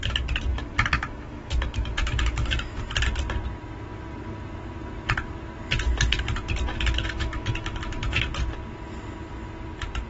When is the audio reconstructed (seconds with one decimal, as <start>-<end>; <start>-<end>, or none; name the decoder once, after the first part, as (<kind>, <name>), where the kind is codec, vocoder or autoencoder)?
0.5-2.8 (autoencoder, DAC-VAE); 6.7-8.2